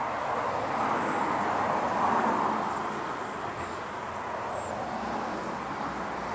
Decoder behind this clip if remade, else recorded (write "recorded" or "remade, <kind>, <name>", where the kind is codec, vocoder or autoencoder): recorded